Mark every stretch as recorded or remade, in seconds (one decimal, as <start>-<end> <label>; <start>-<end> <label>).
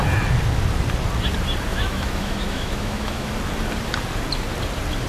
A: 0.0-1.7 recorded; 1.7-3.3 remade; 3.3-5.1 recorded